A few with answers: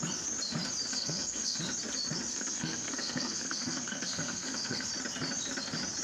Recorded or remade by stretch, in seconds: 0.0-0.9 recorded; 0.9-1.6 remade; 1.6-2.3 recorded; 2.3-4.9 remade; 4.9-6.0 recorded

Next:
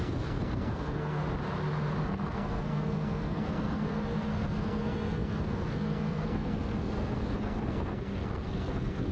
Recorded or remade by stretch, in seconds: 0.0-1.2 remade; 1.2-2.0 recorded; 2.0-9.1 remade

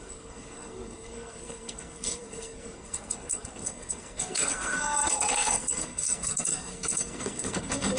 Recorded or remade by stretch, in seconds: 0.0-8.0 remade